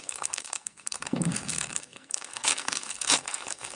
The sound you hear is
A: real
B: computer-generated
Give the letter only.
B